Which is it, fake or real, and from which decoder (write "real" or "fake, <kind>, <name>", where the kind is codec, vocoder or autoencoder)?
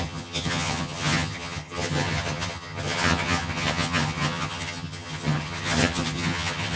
fake, vocoder, HiFi-GAN